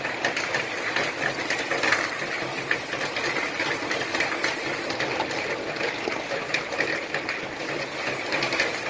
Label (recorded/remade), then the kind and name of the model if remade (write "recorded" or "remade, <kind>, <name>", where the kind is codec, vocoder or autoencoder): recorded